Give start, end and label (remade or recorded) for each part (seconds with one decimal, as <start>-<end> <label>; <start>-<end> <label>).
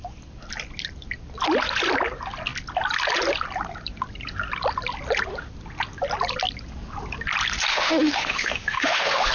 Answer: 0.0-7.7 recorded; 7.7-9.3 remade